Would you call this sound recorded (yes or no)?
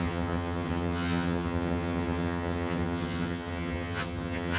no